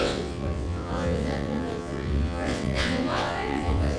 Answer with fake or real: fake